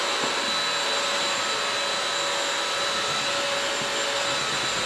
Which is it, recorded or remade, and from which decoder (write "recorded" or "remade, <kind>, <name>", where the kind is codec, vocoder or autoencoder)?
recorded